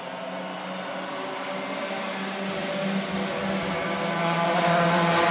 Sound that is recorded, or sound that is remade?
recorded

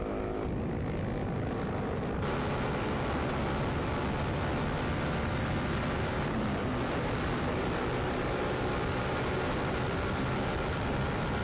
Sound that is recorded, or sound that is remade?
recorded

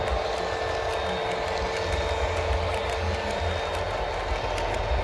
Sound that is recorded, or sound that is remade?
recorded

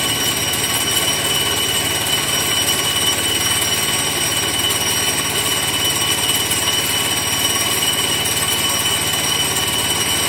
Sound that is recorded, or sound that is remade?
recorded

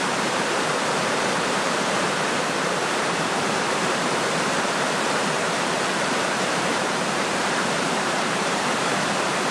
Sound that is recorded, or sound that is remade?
remade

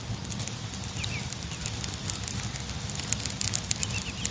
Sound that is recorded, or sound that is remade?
recorded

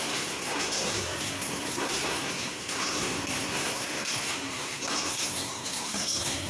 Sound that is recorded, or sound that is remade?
remade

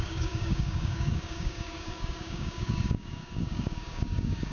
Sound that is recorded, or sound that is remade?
remade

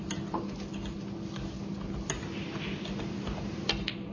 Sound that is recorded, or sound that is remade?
recorded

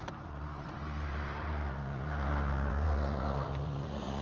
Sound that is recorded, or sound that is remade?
remade